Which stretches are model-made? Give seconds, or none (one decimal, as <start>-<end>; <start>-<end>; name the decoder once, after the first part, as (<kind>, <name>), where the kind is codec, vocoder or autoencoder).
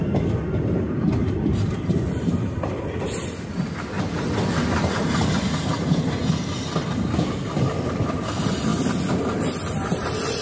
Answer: none